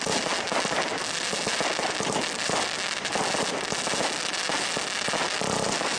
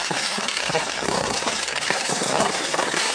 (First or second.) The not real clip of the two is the second